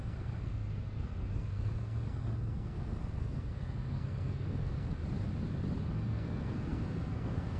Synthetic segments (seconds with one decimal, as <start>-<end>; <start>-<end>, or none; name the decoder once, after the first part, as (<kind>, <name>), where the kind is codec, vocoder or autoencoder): 0.0-5.0 (codec, SNAC); 6.1-7.6